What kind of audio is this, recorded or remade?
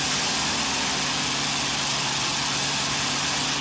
recorded